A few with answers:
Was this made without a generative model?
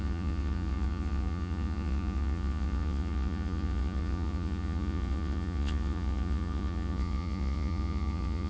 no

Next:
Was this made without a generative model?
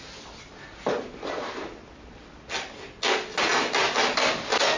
yes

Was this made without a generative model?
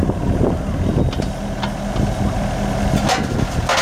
yes